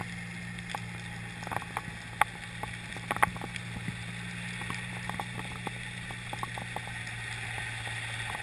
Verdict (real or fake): real